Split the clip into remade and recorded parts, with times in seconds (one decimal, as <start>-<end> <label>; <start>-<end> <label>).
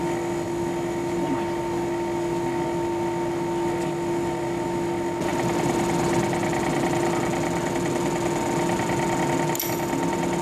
0.0-10.4 recorded